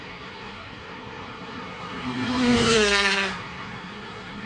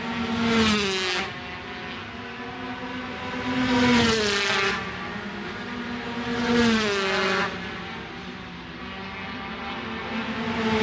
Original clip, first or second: second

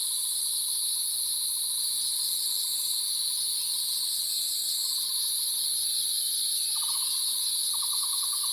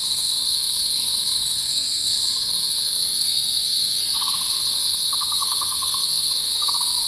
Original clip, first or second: first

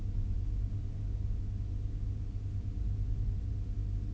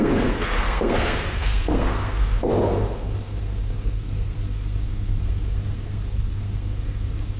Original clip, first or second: first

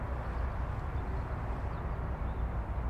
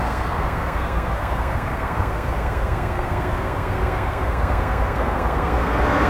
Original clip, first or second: first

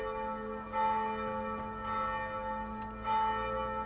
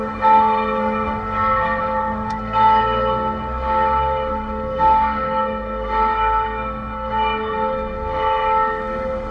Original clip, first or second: first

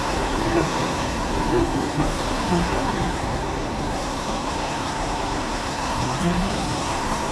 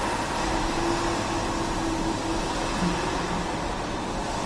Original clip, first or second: second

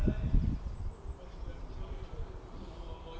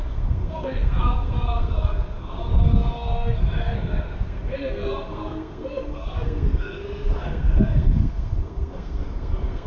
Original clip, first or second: first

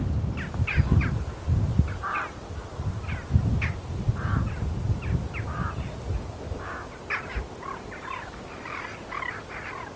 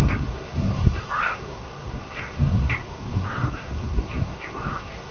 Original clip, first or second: first